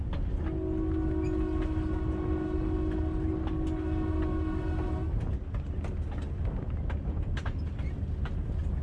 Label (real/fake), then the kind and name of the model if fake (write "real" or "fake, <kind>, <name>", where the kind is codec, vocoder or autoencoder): real